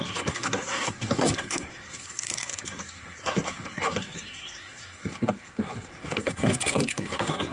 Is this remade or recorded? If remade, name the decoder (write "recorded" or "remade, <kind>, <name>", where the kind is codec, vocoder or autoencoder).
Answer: remade, codec, SNAC